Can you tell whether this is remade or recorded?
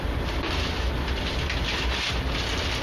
recorded